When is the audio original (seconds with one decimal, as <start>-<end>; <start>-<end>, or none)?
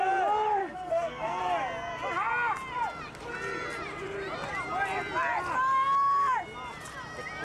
0.0-0.6; 1.4-7.4